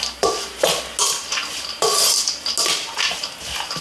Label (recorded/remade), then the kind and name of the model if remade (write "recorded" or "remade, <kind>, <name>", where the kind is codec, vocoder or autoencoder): recorded